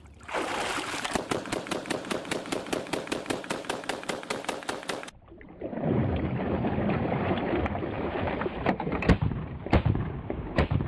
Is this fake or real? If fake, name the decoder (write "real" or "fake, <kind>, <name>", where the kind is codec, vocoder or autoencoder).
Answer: fake, vocoder, BigVGAN v2